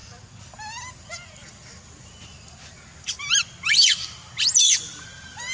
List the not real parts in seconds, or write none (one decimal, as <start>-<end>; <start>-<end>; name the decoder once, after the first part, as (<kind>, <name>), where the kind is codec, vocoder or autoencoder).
none